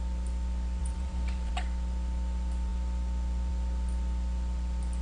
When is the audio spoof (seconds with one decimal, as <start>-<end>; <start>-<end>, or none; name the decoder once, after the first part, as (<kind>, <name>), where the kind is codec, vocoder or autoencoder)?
0.8-1.5 (vocoder, BigVGAN v2)